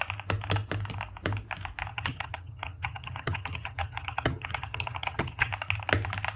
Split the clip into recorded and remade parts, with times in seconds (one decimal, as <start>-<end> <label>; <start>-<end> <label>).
0.0-1.9 recorded; 1.9-5.5 remade; 5.5-6.4 recorded